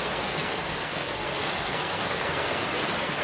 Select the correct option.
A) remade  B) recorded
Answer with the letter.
A